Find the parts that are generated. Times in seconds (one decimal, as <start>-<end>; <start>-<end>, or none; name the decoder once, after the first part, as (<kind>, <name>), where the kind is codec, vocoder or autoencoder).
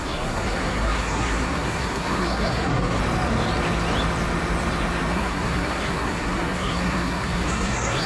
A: 0.0-3.0 (codec, SNAC); 5.1-8.1